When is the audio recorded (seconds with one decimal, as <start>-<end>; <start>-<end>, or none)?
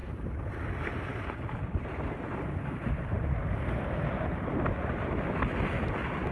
0.0-6.3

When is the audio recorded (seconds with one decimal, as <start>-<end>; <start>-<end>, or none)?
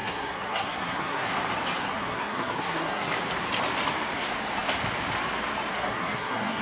1.3-1.8; 3.1-5.7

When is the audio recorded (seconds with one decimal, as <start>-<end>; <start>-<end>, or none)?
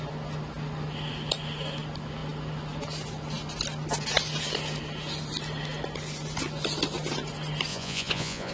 0.0-7.7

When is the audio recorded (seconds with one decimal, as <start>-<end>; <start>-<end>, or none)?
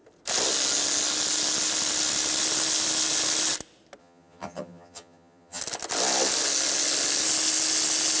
0.0-4.0; 5.6-8.2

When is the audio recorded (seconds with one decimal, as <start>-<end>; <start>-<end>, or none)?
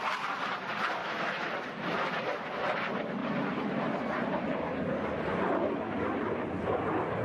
0.0-1.0; 1.5-7.2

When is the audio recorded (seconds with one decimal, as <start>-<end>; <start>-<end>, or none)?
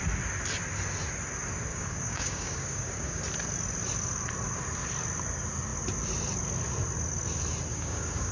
0.0-1.7; 3.2-7.7